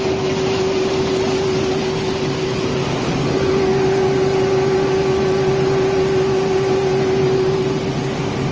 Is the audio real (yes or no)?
yes